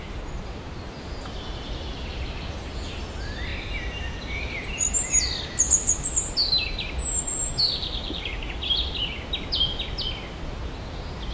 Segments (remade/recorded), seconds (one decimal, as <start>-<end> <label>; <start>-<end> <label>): 0.0-11.3 recorded